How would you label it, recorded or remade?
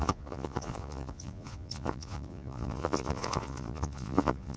remade